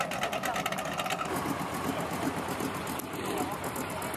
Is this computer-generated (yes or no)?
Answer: no